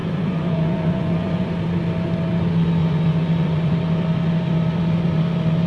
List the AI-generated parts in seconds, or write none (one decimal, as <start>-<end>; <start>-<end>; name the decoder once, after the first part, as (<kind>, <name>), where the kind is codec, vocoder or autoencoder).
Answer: 0.0-1.5 (vocoder, Vocos); 2.8-3.7